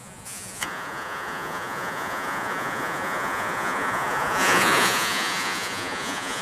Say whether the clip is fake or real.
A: fake